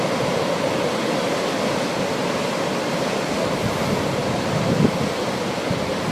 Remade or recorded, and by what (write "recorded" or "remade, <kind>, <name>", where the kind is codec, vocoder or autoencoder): recorded